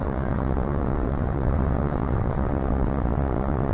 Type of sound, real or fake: fake